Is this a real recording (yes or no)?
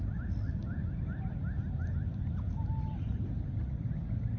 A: yes